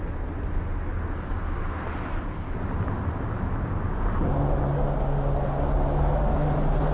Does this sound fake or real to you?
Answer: real